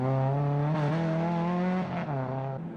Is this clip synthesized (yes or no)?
no